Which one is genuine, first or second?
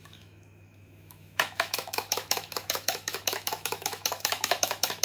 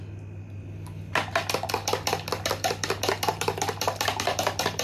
second